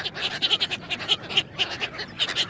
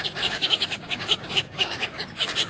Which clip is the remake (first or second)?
second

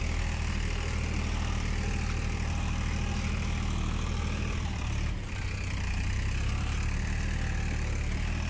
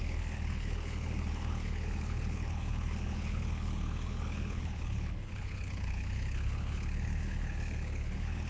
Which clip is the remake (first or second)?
second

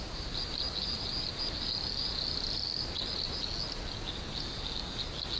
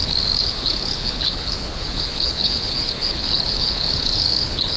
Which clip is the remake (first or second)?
second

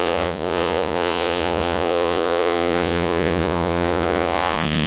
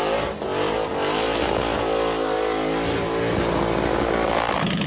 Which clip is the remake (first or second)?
first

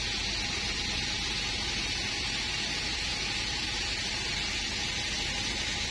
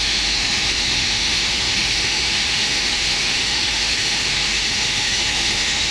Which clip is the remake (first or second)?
second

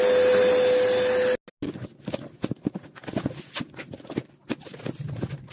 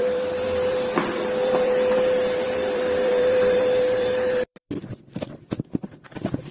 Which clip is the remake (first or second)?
second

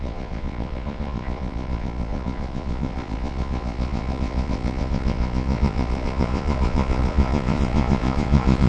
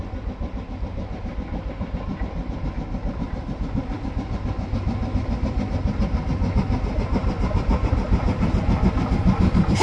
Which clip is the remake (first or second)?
first